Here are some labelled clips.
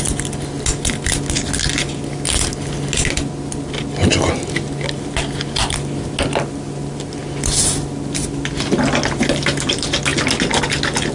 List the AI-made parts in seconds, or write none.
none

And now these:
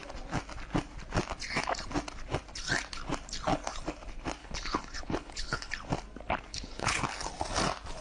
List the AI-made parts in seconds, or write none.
4.4-5.7 (codec, HILCodec); 6.5-7.0

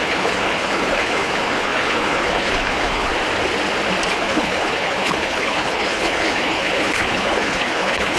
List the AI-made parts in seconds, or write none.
0.0-3.1 (codec, HILCodec); 4.1-8.2

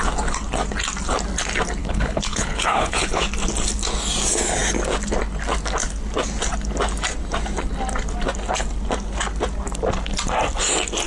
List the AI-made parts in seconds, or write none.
1.8-3.2 (codec, HILCodec)

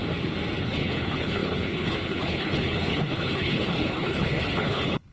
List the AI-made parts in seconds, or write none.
0.6-5.1 (codec, HILCodec)

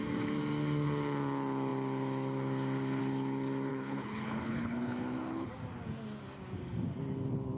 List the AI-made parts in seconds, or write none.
3.7-5.5 (codec, HILCodec)

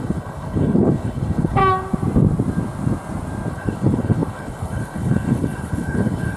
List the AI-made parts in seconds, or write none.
0.0-1.6 (codec, HILCodec); 3.5-6.4